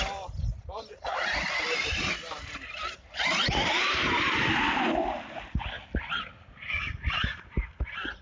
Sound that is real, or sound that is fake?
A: real